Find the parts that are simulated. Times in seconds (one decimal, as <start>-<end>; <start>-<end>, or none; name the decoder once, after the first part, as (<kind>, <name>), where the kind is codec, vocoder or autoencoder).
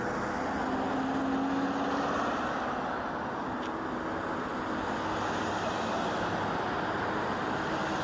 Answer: none